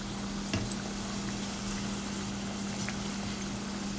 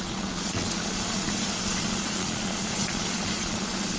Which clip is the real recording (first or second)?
first